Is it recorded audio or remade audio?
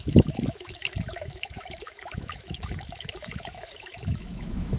remade